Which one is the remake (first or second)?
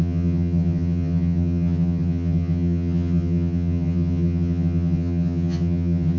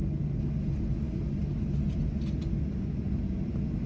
first